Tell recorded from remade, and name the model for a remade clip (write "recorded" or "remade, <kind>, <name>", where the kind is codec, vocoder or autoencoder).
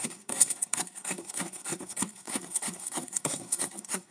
remade, codec, SNAC